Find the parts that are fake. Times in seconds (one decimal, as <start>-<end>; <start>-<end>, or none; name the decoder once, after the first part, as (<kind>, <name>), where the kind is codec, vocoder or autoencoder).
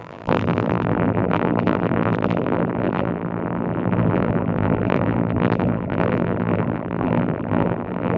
0.0-8.2 (vocoder, BigVGAN v2)